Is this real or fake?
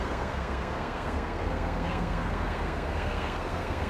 fake